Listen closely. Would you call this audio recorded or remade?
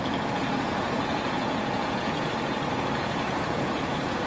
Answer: remade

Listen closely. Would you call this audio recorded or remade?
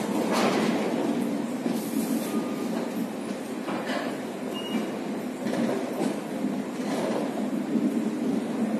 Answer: recorded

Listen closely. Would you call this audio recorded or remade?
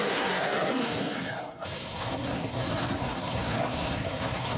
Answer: remade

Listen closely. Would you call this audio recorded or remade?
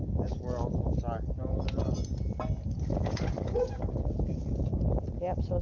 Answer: recorded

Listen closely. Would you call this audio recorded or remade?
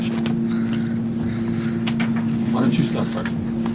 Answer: recorded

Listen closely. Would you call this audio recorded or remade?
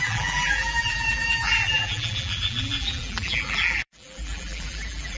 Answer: remade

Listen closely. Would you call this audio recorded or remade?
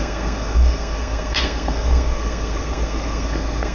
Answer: remade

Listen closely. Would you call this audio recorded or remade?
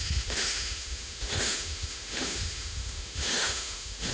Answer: remade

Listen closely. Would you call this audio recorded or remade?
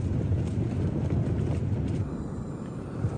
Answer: recorded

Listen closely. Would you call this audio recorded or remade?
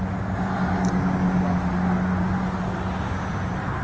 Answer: recorded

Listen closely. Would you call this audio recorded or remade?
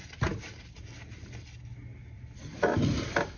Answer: recorded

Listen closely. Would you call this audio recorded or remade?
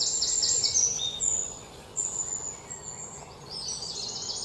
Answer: remade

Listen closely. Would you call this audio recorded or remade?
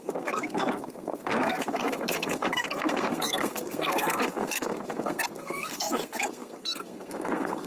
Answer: remade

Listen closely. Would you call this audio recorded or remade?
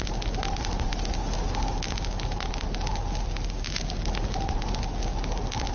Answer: recorded